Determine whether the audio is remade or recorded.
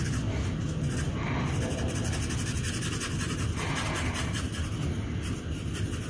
recorded